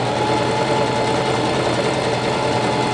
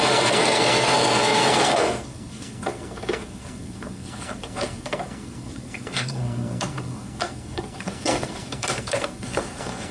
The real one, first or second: first